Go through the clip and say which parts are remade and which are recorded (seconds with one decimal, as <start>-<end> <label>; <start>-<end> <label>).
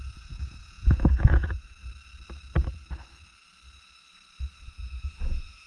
0.0-1.8 remade; 1.8-4.7 recorded; 4.7-5.7 remade